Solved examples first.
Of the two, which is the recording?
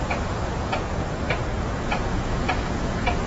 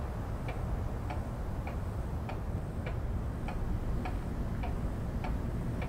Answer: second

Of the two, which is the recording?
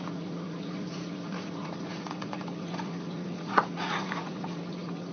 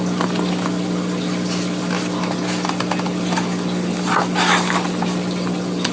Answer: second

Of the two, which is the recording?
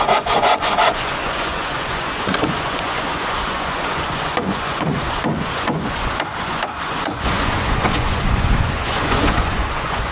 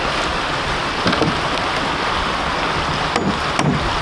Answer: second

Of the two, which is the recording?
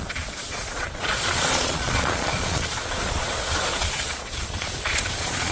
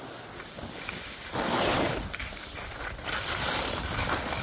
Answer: second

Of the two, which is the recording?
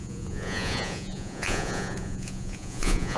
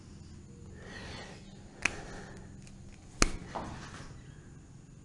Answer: second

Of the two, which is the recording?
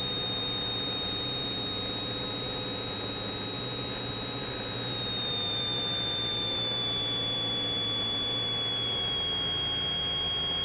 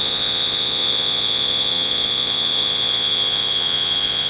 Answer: first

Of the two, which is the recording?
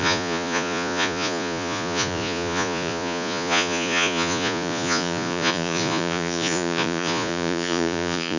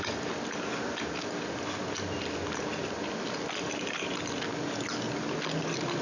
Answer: second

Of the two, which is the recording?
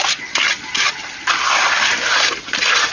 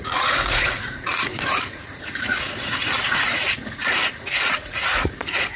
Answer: first